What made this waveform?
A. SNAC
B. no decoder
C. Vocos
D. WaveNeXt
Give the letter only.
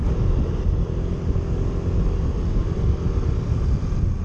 B